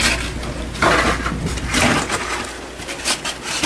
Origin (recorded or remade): recorded